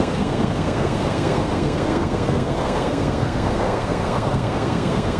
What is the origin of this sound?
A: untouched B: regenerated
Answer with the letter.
B